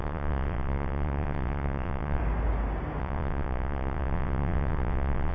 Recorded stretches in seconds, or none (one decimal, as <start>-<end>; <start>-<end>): 2.2-3.0